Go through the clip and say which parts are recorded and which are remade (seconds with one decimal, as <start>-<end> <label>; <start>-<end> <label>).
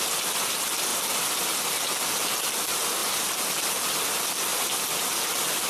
0.0-5.7 recorded